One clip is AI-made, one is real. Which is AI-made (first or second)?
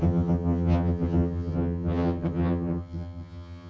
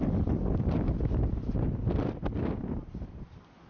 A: first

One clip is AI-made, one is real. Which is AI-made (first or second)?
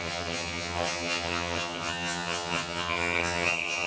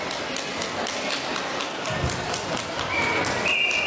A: first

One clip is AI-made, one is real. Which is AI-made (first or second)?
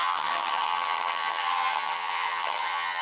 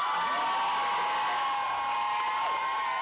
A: first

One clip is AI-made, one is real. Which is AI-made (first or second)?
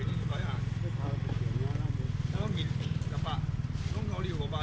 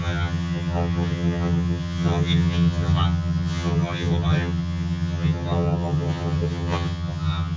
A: second